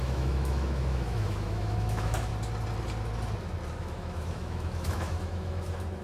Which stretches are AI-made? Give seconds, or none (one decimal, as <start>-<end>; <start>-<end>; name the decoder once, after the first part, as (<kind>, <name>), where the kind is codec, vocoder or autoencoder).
0.0-2.3 (autoencoder, DAC-VAE); 3.8-6.0